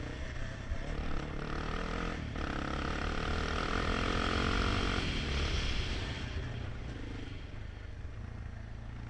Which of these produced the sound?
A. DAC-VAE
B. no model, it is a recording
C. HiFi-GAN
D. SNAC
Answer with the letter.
B